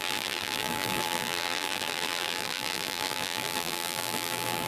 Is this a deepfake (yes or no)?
yes